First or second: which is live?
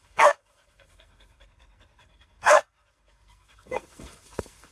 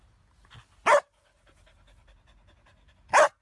second